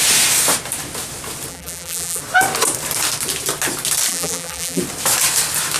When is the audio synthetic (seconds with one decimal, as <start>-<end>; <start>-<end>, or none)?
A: 1.5-2.2; 4.1-4.8